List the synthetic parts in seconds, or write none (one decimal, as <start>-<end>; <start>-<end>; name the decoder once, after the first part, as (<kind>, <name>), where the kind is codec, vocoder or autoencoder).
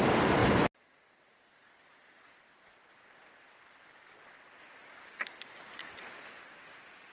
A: none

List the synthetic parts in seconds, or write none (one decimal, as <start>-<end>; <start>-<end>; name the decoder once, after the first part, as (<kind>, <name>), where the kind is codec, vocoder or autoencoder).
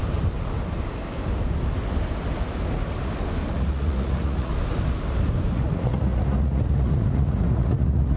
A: 3.5-4.5 (vocoder, Vocos); 5.5-8.2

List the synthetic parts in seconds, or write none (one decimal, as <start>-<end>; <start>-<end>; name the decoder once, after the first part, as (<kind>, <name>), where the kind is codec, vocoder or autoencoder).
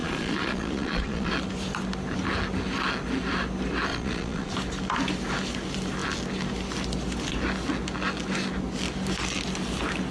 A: 0.0-1.3 (vocoder, Vocos); 3.9-4.5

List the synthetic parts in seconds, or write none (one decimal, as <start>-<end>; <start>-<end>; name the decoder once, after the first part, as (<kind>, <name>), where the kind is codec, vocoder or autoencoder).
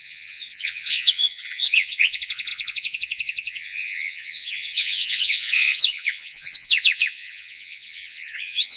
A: 0.0-8.8 (vocoder, Vocos)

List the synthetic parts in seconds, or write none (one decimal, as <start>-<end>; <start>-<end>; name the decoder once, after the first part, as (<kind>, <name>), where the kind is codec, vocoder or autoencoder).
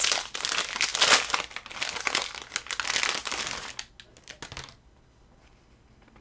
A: none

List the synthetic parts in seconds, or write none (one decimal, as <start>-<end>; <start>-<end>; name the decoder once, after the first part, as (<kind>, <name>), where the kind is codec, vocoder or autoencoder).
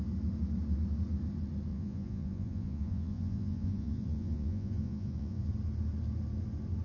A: 1.7-5.5 (vocoder, Vocos)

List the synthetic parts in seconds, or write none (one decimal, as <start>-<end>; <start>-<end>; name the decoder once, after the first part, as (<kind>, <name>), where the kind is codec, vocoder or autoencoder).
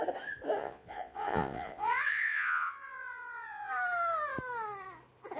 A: 0.6-3.7 (vocoder, Vocos)